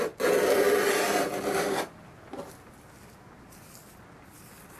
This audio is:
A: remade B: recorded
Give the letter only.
B